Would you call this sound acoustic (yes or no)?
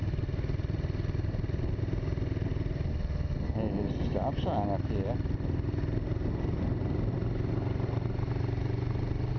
yes